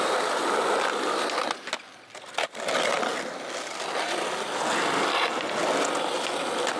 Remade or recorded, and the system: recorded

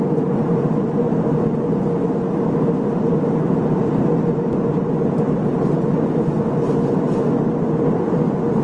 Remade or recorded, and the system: recorded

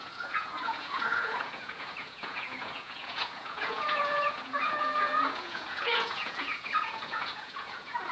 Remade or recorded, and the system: remade, vocoder, Vocos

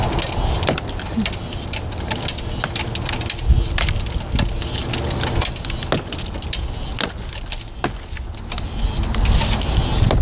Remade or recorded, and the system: recorded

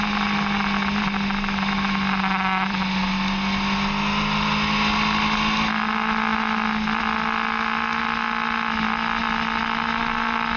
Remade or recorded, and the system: recorded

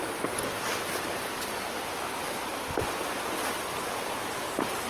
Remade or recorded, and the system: recorded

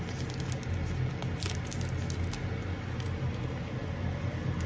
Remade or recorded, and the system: recorded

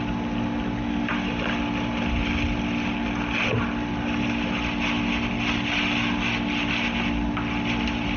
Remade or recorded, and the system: recorded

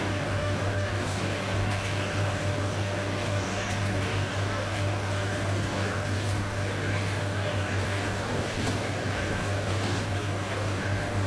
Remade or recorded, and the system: remade, codec, DAC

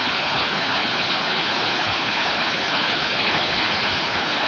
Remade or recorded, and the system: remade, codec, HILCodec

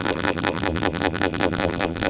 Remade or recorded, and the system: remade, vocoder, BigVGAN v2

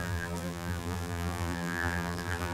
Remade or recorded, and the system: remade, vocoder, BigVGAN v2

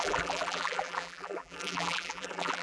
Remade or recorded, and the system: remade, vocoder, BigVGAN v2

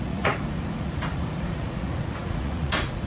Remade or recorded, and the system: remade, vocoder, Vocos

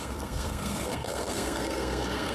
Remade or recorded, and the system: remade, codec, SNAC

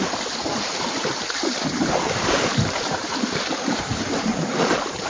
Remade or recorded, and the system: remade, vocoder, BigVGAN v2